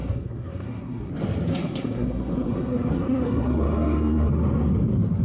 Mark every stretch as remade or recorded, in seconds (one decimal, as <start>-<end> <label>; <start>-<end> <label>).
0.0-1.1 remade; 1.1-1.5 recorded; 1.5-4.3 remade; 4.3-5.2 recorded